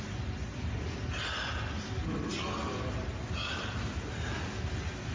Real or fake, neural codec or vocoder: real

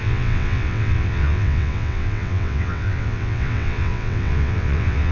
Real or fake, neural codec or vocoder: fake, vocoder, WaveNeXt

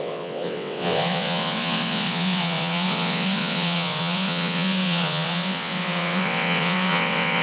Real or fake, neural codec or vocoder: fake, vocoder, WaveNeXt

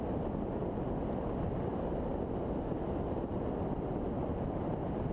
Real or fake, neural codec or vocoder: real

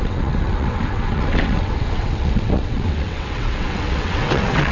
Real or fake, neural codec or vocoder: fake, vocoder, WaveNeXt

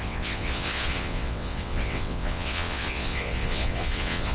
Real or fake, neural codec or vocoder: fake, vocoder, WaveNeXt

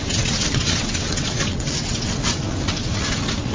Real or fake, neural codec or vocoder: fake, vocoder, WaveNeXt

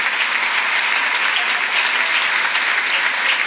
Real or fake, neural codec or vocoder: real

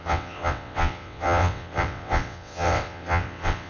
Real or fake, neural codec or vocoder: fake, vocoder, WaveNeXt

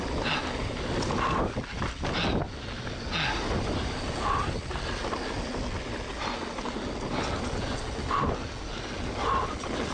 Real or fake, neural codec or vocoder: real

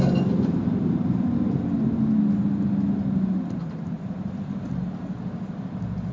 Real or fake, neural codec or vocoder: real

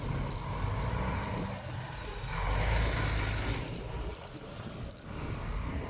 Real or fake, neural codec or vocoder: real